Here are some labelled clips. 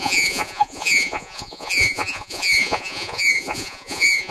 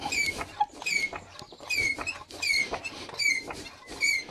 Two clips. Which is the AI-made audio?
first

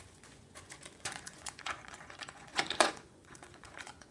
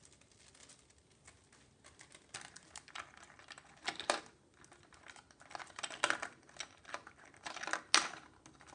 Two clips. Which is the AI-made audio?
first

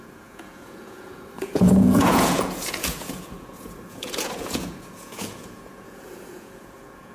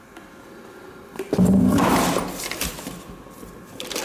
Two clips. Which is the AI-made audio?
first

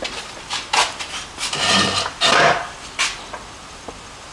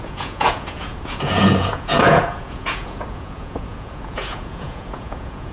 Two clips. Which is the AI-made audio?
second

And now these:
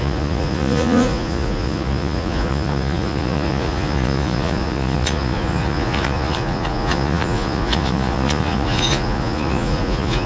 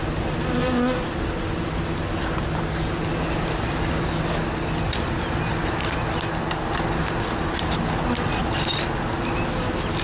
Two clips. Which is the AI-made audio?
first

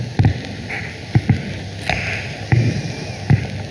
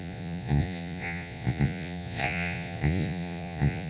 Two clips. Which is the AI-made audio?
second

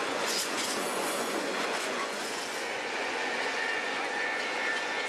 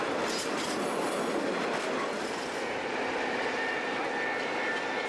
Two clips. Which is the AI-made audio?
first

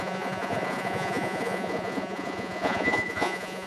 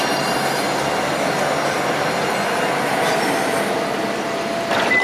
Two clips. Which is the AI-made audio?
first